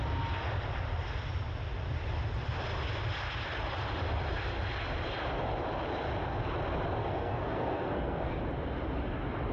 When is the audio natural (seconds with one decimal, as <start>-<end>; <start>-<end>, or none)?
0.0-7.0; 8.3-9.5